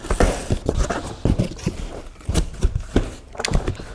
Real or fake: real